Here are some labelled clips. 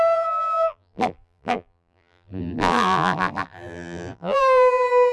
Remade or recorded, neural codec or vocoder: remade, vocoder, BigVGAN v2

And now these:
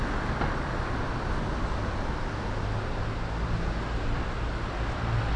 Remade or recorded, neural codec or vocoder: recorded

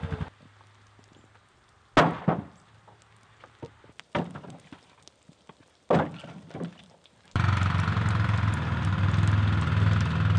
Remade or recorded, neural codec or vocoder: recorded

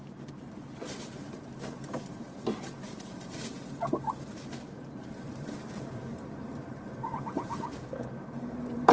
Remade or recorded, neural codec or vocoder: remade, vocoder, BigVGAN v2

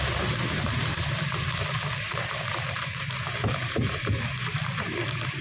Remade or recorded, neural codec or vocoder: remade, vocoder, BigVGAN v2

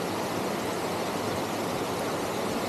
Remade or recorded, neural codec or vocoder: recorded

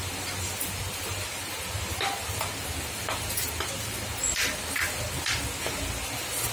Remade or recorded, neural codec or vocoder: recorded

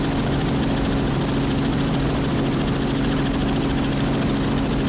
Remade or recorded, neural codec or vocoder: recorded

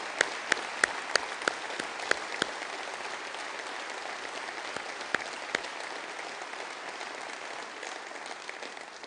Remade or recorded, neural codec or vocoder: recorded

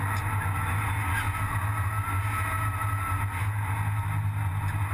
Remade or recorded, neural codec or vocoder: recorded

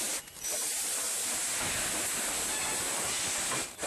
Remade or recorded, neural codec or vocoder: recorded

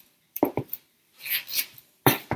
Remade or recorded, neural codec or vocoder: remade, vocoder, BigVGAN v2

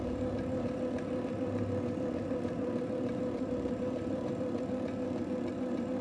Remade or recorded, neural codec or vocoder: remade, vocoder, BigVGAN v2